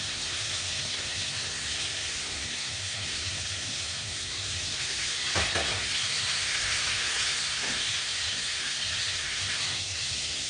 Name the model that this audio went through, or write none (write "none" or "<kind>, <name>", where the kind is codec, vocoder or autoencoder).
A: codec, SNAC